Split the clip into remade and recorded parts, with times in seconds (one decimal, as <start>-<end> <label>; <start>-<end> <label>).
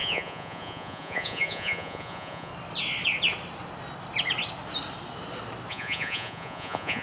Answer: 0.0-2.5 remade; 2.5-5.7 recorded; 5.7-7.0 remade